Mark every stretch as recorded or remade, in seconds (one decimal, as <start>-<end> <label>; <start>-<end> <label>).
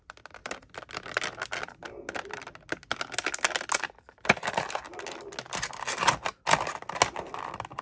0.0-7.8 recorded